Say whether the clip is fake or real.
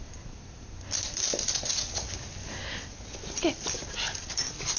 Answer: real